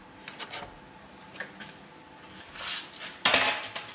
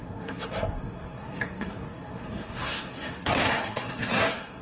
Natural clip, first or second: first